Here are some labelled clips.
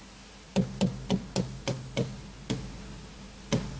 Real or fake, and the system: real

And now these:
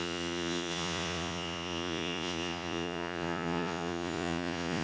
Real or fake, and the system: fake, vocoder, Vocos